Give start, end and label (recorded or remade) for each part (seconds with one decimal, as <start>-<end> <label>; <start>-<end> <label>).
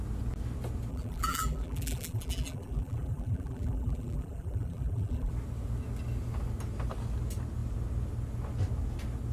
0.0-0.9 recorded; 0.9-5.3 remade; 5.3-9.3 recorded